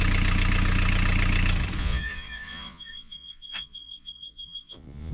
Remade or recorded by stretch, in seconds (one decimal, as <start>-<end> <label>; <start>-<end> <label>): 0.0-1.8 recorded; 1.8-5.1 remade